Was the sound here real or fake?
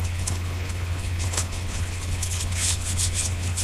fake